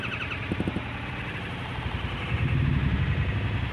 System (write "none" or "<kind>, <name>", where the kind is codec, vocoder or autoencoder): none